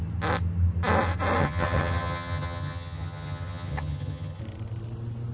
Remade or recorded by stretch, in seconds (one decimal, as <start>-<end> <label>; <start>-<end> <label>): 0.0-1.4 recorded; 1.4-4.4 remade; 4.4-5.3 recorded